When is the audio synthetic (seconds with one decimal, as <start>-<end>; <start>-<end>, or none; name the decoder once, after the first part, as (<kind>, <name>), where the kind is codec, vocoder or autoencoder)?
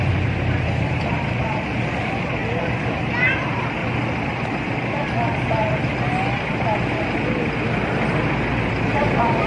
0.0-2.4 (vocoder, BigVGAN v2); 3.0-3.8; 8.7-9.5